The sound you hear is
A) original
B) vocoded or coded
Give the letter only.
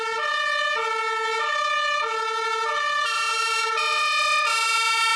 A